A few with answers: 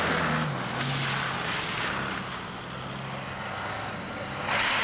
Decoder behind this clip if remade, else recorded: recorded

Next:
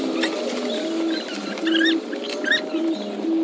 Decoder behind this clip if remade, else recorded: recorded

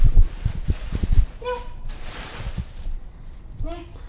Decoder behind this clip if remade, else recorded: remade, vocoder, BigVGAN v2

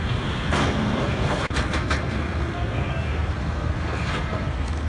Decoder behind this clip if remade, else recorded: remade, codec, SNAC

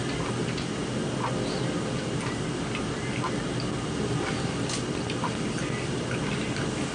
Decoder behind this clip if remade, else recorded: recorded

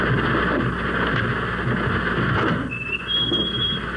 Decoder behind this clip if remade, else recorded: recorded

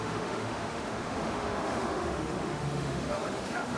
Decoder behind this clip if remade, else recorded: remade, autoencoder, DAC-VAE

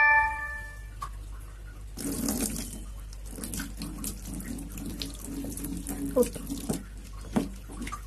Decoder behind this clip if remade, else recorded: recorded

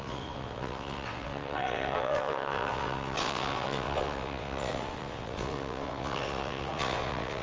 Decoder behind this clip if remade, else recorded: remade, vocoder, WaveNeXt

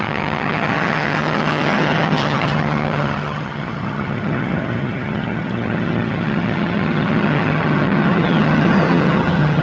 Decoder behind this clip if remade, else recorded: remade, vocoder, HiFi-GAN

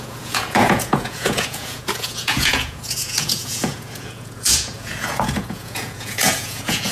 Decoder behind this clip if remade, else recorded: remade, vocoder, Vocos